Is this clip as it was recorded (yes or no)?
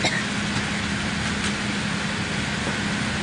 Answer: yes